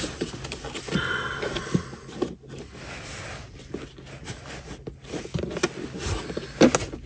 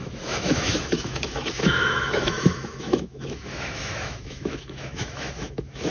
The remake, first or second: second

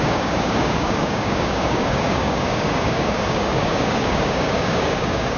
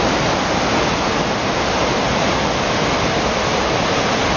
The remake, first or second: first